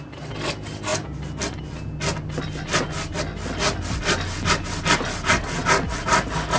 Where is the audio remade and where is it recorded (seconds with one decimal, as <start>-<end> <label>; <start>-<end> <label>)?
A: 0.0-6.6 recorded